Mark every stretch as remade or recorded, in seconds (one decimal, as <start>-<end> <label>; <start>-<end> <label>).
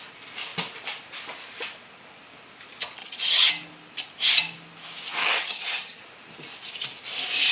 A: 0.0-3.0 recorded; 3.0-3.5 remade; 3.5-5.2 recorded; 5.2-6.0 remade; 6.0-7.5 recorded